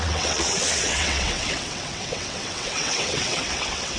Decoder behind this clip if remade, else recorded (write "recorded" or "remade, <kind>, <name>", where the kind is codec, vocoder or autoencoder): remade, vocoder, WaveNeXt